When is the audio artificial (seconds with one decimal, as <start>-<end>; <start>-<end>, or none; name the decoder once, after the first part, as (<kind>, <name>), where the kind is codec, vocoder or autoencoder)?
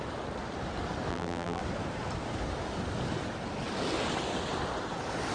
1.1-1.6 (vocoder, BigVGAN v2)